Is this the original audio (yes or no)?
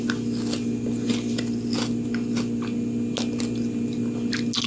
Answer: yes